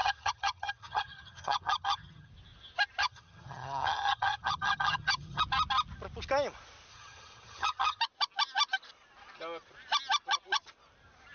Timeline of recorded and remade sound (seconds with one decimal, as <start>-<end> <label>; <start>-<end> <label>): 0.0-2.3 remade; 2.3-3.0 recorded; 3.0-5.4 remade; 5.4-6.9 recorded; 6.9-8.0 remade; 8.0-11.3 recorded